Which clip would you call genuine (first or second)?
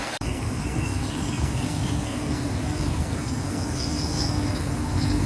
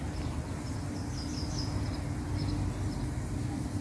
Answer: second